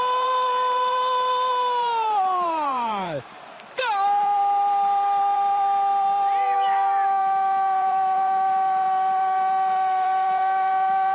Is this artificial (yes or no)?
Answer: yes